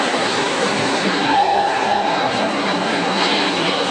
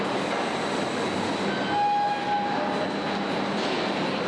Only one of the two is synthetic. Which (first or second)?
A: first